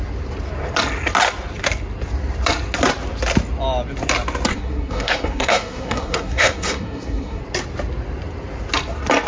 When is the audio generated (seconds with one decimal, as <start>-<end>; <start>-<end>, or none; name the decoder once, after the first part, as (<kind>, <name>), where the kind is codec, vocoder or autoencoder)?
4.5-7.4 (codec, SNAC)